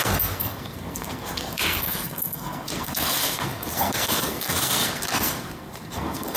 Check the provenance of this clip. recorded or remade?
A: remade